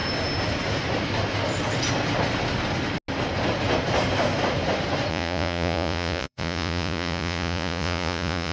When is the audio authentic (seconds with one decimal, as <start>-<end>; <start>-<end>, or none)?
0.0-5.1